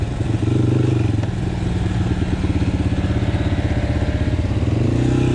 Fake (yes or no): no